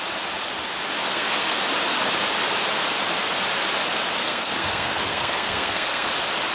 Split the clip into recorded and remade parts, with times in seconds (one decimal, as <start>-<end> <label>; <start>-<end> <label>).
0.0-1.1 recorded; 1.1-1.6 remade; 1.6-4.2 recorded; 4.2-6.1 remade; 6.1-6.5 recorded